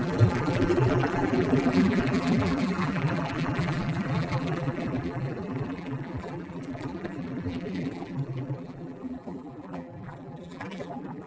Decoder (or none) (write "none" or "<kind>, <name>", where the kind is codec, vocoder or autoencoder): vocoder, BigVGAN v2